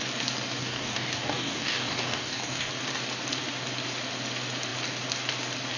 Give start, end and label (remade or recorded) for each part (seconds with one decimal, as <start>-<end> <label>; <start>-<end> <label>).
0.0-0.6 recorded; 0.6-2.7 remade; 2.7-5.8 recorded